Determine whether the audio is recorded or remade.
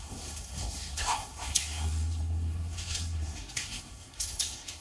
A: remade